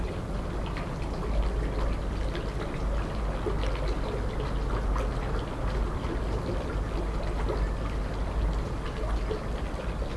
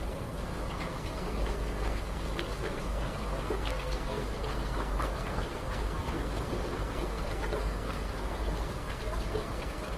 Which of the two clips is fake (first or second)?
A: second